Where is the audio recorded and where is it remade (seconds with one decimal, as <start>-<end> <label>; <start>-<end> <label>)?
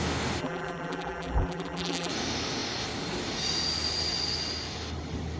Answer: 0.0-0.4 recorded; 0.4-2.1 remade; 2.1-5.4 recorded